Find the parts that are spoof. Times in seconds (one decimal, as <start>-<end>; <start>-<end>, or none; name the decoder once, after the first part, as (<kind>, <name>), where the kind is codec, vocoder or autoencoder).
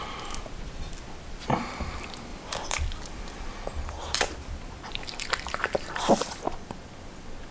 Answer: 2.3-5.8 (vocoder, BigVGAN v2)